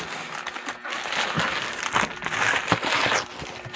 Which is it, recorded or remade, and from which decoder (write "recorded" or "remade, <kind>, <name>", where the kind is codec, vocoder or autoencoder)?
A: recorded